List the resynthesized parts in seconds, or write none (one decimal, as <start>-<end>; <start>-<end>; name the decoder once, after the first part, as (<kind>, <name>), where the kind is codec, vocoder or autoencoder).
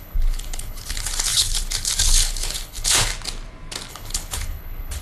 0.0-3.1 (codec, HILCodec); 3.9-5.0